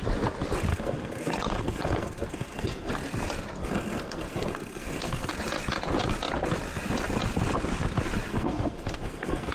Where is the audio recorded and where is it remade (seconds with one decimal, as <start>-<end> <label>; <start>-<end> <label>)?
0.0-0.7 recorded; 0.7-2.9 remade; 2.9-3.6 recorded; 3.6-5.3 remade; 5.3-8.3 recorded; 8.3-9.5 remade